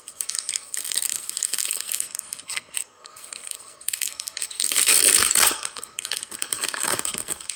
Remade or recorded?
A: remade